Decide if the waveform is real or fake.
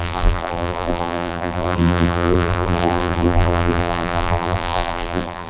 fake